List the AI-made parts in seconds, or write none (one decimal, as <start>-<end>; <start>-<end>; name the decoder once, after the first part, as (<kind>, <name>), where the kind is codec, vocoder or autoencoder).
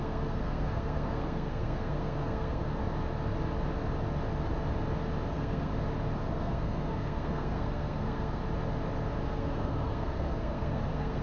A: 0.0-2.8 (codec, SNAC); 5.3-5.7; 6.3-8.4; 9.2-11.2